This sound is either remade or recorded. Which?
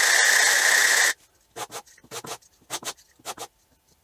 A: recorded